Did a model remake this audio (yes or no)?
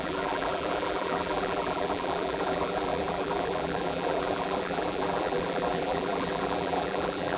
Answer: yes